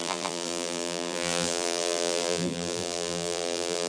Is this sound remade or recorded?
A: remade